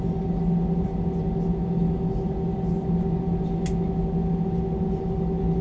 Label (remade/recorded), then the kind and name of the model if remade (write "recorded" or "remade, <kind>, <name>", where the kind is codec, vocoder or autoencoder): recorded